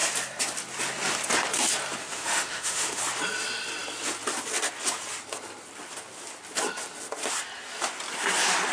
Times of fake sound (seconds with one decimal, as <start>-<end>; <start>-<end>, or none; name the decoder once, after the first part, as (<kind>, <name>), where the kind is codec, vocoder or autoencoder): 2.0-3.0 (autoencoder, DAC-VAE)